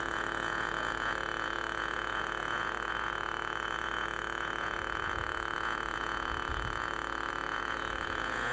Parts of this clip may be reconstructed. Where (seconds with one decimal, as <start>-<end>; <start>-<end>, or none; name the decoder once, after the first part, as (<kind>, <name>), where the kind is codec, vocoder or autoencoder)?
0.0-8.5 (vocoder, Vocos)